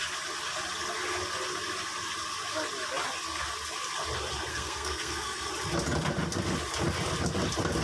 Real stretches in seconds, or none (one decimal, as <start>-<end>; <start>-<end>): 0.0-4.5; 5.5-7.8

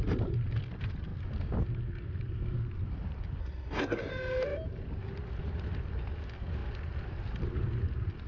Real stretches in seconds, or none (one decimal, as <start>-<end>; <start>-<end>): 0.0-3.4; 4.1-8.3

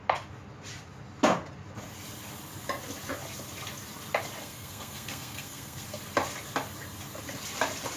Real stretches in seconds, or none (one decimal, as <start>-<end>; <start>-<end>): 0.0-4.4; 6.0-8.0

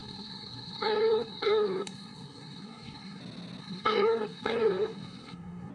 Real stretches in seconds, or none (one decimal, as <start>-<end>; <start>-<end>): 3.2-3.6